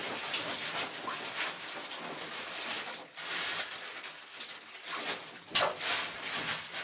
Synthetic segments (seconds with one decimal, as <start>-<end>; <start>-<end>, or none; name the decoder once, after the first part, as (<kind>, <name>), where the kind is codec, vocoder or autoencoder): 0.0-4.1 (vocoder, BigVGAN v2)